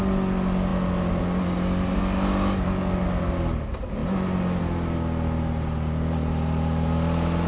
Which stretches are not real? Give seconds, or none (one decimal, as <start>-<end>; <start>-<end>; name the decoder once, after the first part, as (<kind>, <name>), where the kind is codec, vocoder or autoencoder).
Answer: none